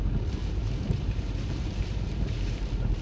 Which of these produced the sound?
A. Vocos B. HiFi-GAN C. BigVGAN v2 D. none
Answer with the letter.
C